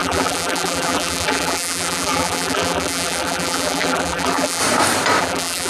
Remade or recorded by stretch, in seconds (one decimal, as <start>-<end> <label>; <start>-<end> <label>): 0.0-4.6 remade; 4.6-5.2 recorded; 5.2-5.7 remade